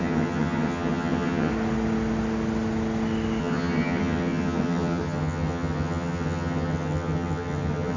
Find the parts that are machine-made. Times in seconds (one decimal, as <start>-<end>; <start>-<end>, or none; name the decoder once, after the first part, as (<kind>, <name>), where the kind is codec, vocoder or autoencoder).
0.0-1.5 (vocoder, HiFi-GAN); 3.4-8.0